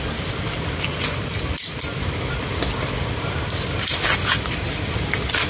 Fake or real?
real